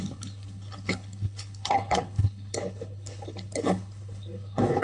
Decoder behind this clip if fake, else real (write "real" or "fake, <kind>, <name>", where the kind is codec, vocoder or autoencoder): fake, codec, HILCodec